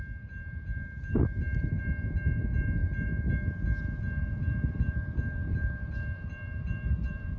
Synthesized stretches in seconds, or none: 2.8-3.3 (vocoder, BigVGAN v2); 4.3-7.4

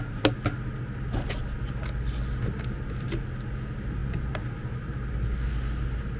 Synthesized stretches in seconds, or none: 4.0-4.5 (vocoder, BigVGAN v2)